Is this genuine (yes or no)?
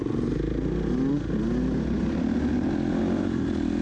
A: yes